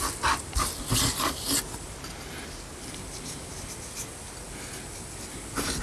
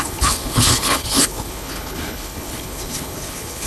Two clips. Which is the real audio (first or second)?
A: first